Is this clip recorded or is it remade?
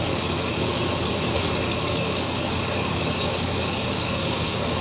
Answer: remade